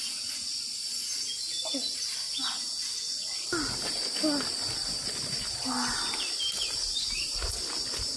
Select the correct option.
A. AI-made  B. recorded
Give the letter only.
B